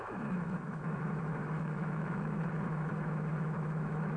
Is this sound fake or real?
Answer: fake